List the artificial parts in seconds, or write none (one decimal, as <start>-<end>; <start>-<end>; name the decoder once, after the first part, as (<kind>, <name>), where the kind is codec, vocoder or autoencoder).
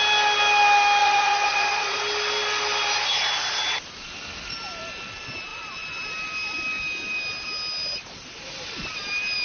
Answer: 1.0-2.0 (vocoder, Vocos)